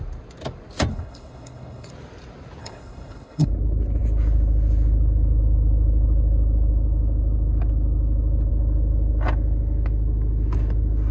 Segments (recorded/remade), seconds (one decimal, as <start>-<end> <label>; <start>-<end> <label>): 0.0-0.9 recorded; 0.9-1.9 remade; 1.9-2.6 recorded; 2.6-3.5 remade; 3.5-11.1 recorded